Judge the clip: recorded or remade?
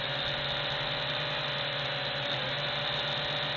recorded